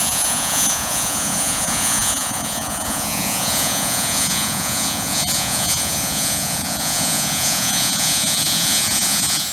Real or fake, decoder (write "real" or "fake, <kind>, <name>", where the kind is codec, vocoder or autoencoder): fake, vocoder, Vocos